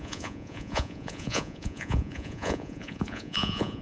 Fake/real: fake